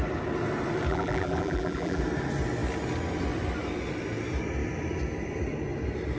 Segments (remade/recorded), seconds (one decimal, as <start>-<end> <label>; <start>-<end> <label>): 0.0-0.9 recorded; 0.9-2.0 remade; 2.0-6.2 recorded

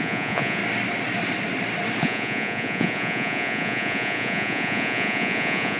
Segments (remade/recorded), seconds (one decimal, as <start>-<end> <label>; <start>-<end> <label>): 0.0-0.6 remade; 0.6-2.0 recorded; 2.0-5.8 remade

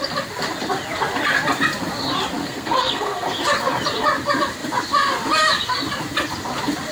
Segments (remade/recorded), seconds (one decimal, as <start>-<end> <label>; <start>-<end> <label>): 0.0-2.4 recorded; 2.4-3.4 remade; 3.4-6.9 recorded

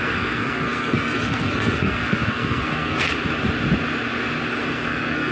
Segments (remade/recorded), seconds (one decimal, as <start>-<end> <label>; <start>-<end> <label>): 0.0-3.1 remade; 3.1-4.6 recorded; 4.6-5.3 remade